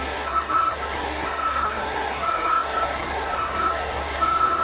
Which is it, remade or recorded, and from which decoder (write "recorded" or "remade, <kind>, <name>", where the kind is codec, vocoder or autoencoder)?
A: remade, codec, SNAC